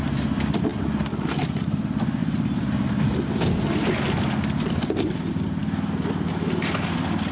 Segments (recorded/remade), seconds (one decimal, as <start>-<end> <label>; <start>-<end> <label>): 0.0-0.7 recorded; 0.7-1.8 remade; 1.8-2.2 recorded; 2.2-3.0 remade; 3.0-7.3 recorded